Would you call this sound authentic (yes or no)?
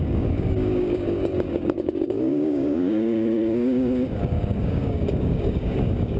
no